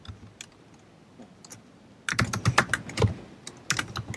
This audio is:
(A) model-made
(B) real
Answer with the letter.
B